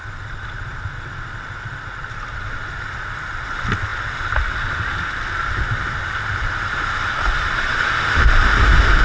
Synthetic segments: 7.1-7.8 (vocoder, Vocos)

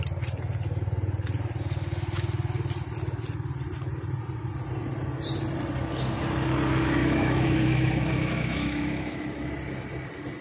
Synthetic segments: 7.0-9.5 (autoencoder, DAC-VAE)

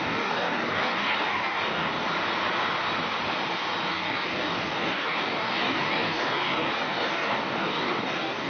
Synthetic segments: 0.0-1.9 (codec, DAC); 3.9-8.5